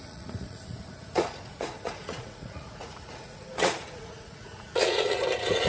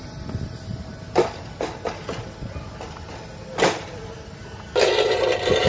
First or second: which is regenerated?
first